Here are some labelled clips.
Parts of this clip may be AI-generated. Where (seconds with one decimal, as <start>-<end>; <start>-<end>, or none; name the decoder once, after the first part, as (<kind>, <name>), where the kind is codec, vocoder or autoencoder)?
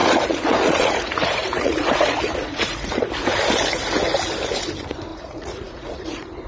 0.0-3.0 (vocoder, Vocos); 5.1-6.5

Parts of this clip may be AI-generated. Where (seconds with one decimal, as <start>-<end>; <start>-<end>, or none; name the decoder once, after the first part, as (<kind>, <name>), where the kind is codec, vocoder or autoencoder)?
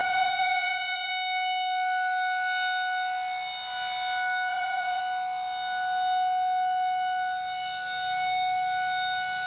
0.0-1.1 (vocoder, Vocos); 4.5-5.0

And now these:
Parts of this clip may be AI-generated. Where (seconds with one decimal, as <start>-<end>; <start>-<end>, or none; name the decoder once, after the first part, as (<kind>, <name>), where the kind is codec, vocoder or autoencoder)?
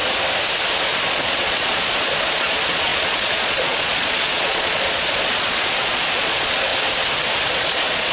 1.1-6.7 (vocoder, Vocos); 7.5-8.1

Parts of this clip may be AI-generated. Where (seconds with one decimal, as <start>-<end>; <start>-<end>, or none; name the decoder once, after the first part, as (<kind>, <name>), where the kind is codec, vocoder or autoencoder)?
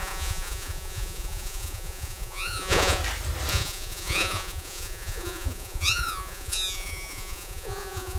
0.0-3.0 (vocoder, Vocos); 3.5-8.2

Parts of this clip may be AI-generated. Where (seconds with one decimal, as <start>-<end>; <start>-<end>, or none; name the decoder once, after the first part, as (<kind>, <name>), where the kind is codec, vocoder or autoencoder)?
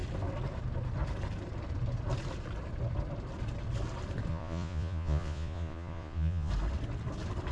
4.3-6.5 (vocoder, Vocos)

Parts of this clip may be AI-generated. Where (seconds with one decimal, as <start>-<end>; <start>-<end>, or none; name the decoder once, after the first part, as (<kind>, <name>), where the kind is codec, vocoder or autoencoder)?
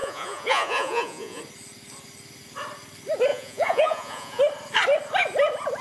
0.0-1.4 (vocoder, Vocos); 3.3-4.4